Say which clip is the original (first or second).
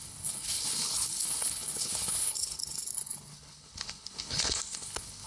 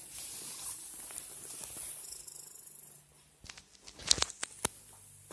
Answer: second